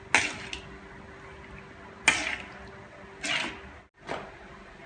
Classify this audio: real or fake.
real